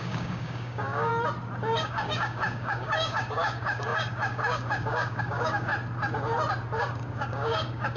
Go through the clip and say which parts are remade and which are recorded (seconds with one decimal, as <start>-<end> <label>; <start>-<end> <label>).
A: 0.0-1.1 remade; 1.1-1.6 recorded; 1.6-5.7 remade; 5.7-6.8 recorded; 6.8-8.0 remade

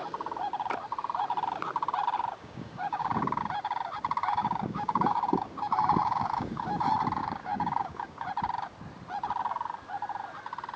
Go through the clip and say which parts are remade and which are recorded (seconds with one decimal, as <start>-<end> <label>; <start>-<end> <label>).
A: 0.0-2.4 recorded; 2.4-3.4 remade; 3.4-4.2 recorded; 4.2-6.8 remade; 6.8-7.2 recorded; 7.2-8.3 remade; 8.3-10.8 recorded